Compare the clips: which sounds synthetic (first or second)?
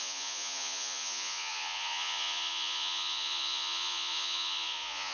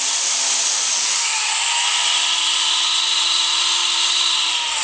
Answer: first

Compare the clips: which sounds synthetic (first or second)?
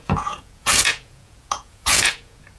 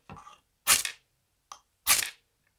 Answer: first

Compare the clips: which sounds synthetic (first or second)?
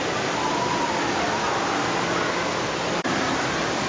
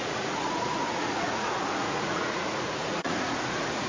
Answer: second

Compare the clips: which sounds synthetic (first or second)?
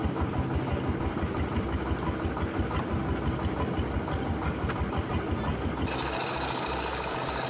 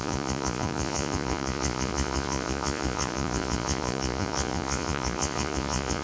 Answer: second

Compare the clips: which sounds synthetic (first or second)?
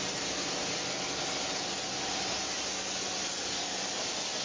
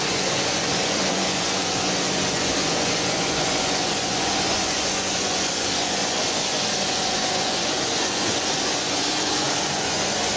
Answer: second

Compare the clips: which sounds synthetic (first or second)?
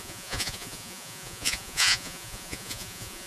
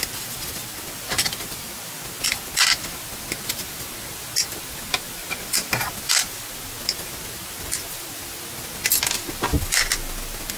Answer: first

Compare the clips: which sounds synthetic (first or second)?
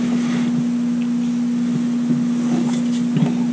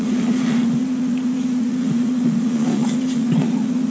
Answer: second